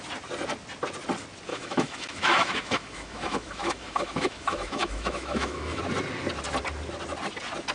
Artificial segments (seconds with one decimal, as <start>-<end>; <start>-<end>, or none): 1.5-5.8